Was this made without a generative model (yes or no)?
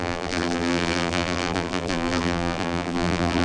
no